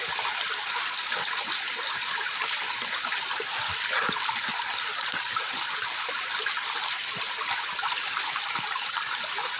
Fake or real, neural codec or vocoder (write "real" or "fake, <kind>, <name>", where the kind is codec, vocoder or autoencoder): real